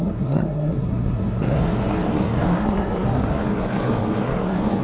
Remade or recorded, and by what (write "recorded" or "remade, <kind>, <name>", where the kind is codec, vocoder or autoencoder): remade, codec, SNAC